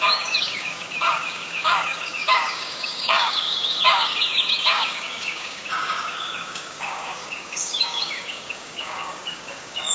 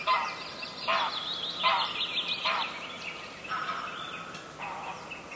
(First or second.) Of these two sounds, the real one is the second